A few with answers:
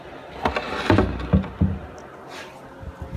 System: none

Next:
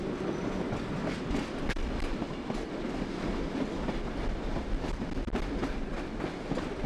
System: none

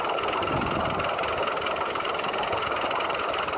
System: vocoder, BigVGAN v2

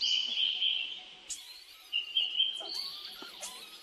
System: none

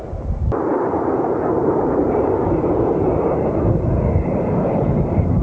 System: vocoder, BigVGAN v2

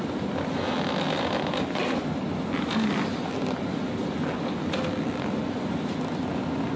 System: none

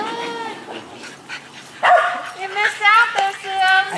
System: vocoder, BigVGAN v2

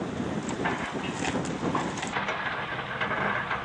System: vocoder, BigVGAN v2